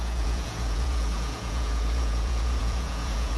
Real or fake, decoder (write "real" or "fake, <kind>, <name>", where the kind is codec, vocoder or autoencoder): fake, vocoder, Vocos